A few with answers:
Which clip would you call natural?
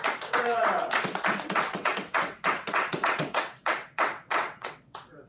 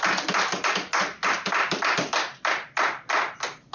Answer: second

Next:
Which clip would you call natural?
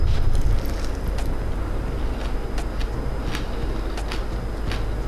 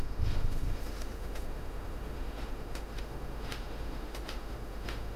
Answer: first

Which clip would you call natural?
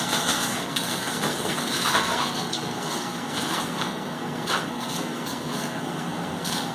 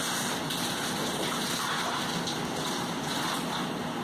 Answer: second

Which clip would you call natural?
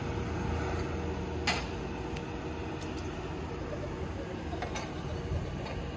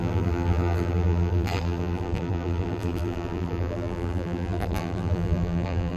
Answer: first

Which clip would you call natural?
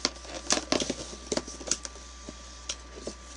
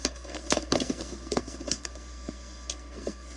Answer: first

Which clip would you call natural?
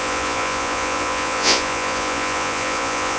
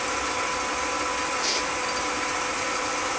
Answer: second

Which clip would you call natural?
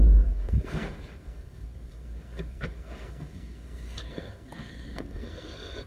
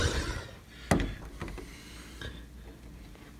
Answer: second